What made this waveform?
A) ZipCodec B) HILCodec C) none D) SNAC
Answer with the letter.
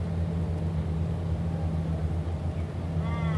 C